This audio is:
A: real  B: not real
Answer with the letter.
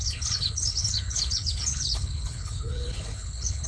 B